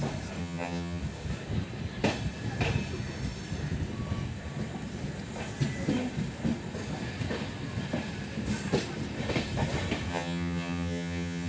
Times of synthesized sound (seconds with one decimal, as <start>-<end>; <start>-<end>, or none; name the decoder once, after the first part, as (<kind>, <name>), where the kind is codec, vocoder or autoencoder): 0.4-1.0 (vocoder, HiFi-GAN); 10.1-11.5